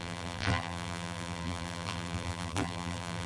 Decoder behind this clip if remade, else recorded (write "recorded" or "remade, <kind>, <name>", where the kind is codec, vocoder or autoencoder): remade, vocoder, BigVGAN v2